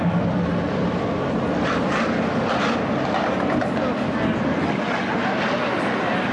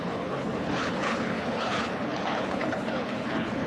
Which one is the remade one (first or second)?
second